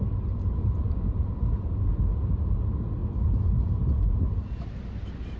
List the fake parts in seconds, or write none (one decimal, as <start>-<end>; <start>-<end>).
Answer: 0.6-1.2